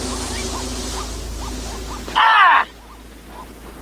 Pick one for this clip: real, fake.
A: real